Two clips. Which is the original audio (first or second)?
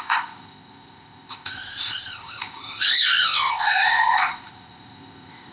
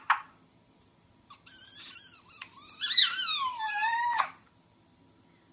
second